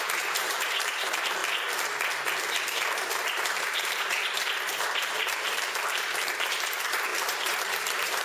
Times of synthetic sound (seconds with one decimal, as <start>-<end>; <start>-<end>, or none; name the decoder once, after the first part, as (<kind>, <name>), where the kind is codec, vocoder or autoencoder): 0.0-1.4 (vocoder, BigVGAN v2); 2.6-8.2